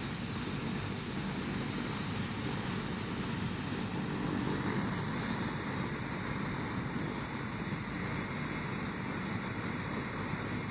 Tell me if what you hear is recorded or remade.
recorded